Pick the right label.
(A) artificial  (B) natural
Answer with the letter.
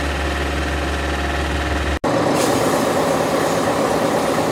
B